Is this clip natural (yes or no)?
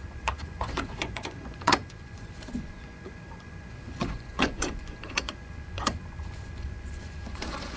no